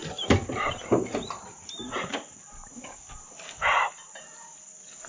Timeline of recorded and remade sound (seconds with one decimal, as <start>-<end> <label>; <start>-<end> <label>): 0.0-5.1 recorded